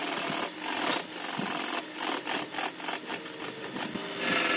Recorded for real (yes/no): yes